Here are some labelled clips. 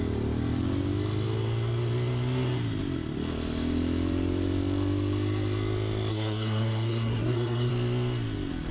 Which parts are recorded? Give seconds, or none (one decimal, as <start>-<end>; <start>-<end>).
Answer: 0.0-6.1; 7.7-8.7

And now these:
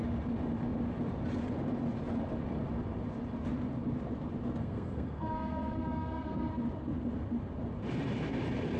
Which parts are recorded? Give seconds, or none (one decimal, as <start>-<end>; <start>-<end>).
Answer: 0.0-4.6; 6.5-8.8

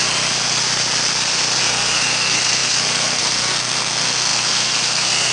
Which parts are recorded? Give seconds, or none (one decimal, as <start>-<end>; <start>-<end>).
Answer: 0.0-1.6